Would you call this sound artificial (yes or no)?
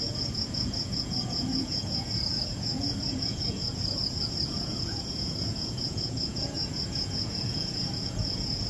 yes